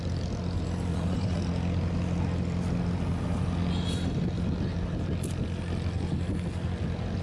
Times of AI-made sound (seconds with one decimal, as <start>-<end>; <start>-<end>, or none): 0.9-1.4